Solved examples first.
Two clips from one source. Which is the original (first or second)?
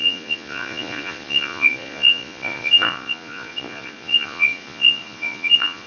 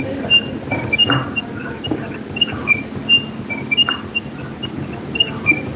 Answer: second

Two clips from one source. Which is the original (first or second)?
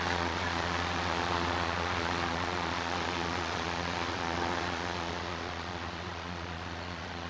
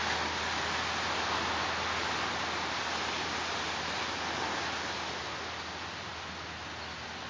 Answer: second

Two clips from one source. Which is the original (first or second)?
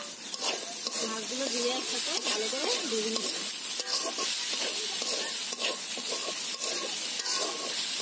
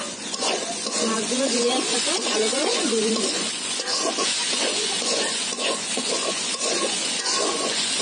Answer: first